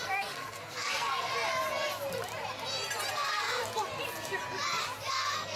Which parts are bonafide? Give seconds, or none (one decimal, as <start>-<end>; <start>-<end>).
1.3-3.1; 3.6-5.1